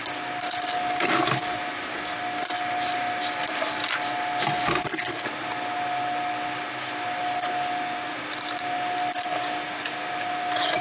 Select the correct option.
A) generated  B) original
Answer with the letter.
B